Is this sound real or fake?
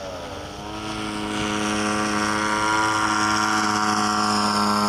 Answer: real